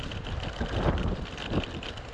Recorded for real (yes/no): yes